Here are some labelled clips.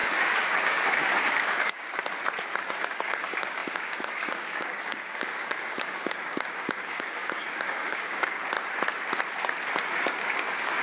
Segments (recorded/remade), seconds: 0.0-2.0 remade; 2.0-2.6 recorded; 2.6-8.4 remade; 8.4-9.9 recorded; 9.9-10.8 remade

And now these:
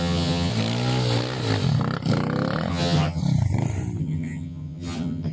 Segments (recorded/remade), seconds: 0.0-0.5 remade; 0.5-2.7 recorded; 2.7-3.2 remade; 3.2-4.0 recorded; 4.0-5.3 remade

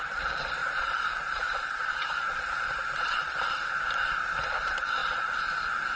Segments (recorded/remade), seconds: 0.0-6.0 recorded

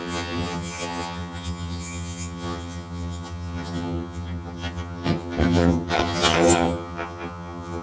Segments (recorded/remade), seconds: 0.0-7.8 remade

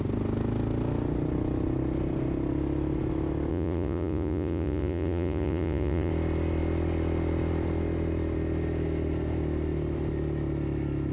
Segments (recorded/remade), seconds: 0.0-3.5 recorded; 3.5-6.1 remade; 6.1-11.1 recorded

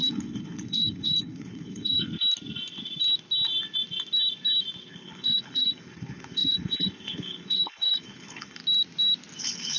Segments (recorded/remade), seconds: 0.0-2.1 remade; 2.1-4.9 recorded; 4.9-8.6 remade; 8.6-9.4 recorded; 9.4-9.8 remade

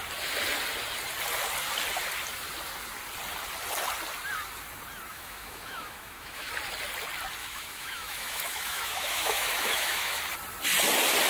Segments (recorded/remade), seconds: 0.0-5.1 recorded; 5.1-6.5 remade; 6.5-7.4 recorded; 7.4-10.2 remade; 10.2-11.3 recorded